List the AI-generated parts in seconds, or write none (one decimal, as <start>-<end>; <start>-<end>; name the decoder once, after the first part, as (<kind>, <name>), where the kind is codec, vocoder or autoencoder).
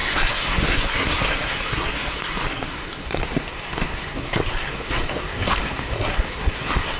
0.0-7.0 (codec, SNAC)